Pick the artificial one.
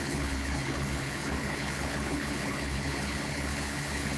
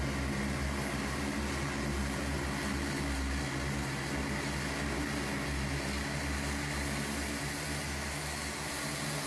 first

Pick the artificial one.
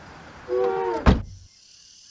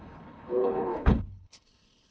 second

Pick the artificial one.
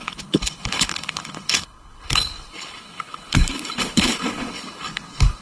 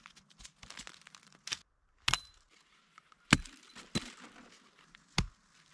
first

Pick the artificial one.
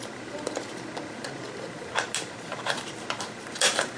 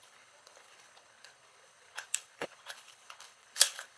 second